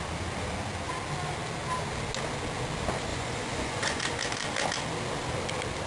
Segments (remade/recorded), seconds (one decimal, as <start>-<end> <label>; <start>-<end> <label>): 0.0-3.1 recorded; 3.1-4.0 remade; 4.0-5.9 recorded